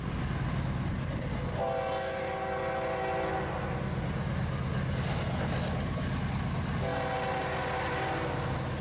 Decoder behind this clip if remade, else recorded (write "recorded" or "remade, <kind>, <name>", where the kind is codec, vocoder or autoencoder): recorded